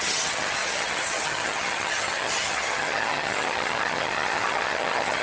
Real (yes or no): no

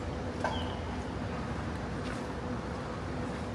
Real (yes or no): yes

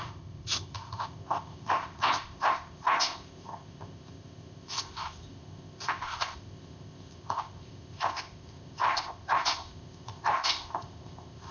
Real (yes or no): no